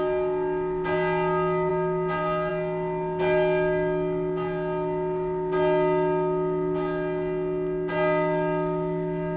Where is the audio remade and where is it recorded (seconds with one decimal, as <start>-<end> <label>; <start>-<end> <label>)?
0.0-9.4 recorded